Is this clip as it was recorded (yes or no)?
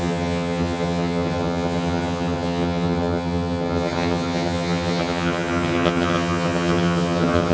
no